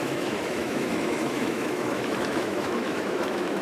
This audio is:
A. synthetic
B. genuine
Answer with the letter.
A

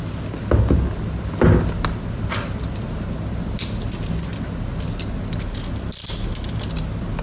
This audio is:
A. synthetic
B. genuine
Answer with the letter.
B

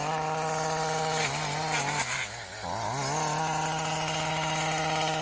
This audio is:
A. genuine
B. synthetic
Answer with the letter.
A